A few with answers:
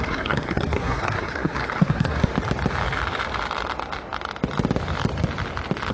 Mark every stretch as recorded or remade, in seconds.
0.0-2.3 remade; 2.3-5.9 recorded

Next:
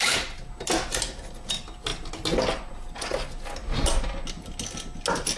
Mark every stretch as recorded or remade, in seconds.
0.0-5.4 recorded